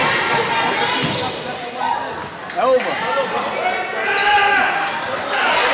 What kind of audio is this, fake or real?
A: real